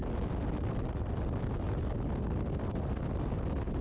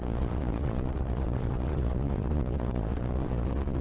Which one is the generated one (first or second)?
second